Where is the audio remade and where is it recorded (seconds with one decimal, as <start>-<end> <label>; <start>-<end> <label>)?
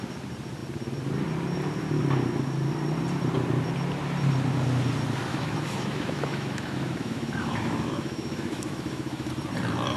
0.0-5.3 recorded; 5.3-9.3 remade; 9.3-10.0 recorded